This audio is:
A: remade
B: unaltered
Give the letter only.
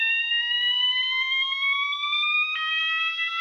B